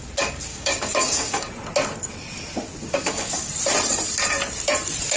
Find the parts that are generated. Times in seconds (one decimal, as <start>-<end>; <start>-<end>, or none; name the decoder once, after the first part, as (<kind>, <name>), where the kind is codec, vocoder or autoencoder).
0.5-1.5 (codec, DAC); 2.8-3.5

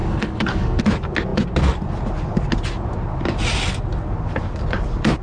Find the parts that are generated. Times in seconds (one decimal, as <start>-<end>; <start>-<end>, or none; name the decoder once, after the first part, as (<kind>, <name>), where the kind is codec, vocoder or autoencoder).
0.0-0.8 (codec, DAC)

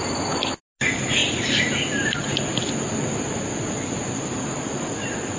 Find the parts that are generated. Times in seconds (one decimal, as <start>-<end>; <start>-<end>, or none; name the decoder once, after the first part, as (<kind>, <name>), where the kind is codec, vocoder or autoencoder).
none

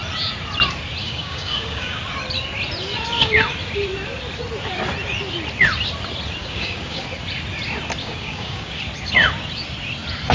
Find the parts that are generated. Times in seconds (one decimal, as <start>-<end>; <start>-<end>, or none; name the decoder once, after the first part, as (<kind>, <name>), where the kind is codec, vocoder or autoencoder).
1.0-2.0 (codec, DAC); 6.4-7.0; 8.0-8.8

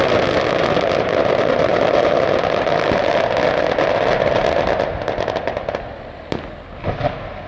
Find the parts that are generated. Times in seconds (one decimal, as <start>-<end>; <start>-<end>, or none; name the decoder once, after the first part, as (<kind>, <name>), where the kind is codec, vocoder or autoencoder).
none

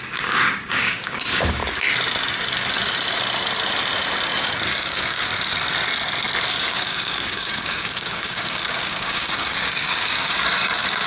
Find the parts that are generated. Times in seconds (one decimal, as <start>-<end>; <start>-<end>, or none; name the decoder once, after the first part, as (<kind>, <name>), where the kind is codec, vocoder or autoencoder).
0.0-1.6 (codec, DAC); 4.7-5.3; 6.6-11.1

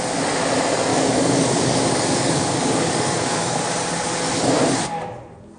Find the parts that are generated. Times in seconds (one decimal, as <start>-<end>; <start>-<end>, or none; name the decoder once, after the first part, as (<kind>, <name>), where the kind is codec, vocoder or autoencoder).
0.9-3.7 (codec, DAC)

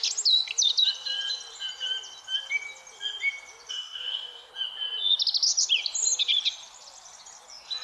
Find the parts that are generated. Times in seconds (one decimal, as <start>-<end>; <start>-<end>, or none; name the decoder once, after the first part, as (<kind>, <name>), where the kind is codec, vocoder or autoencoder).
3.7-4.5 (codec, DAC)